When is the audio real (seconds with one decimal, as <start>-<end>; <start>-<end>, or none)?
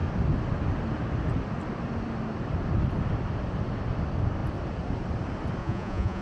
0.0-5.6